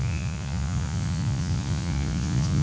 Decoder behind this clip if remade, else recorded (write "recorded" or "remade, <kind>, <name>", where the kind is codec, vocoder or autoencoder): remade, vocoder, Vocos